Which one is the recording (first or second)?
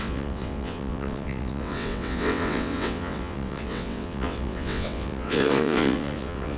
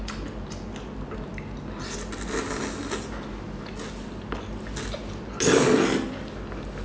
second